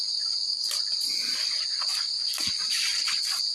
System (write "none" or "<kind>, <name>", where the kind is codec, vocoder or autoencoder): vocoder, BigVGAN v2